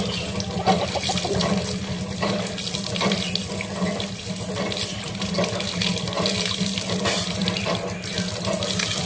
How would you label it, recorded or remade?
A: recorded